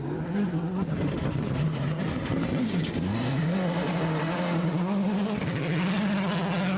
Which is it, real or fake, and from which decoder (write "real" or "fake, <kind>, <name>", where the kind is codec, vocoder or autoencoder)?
real